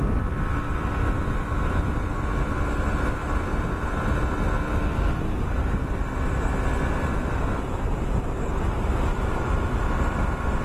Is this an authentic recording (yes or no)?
yes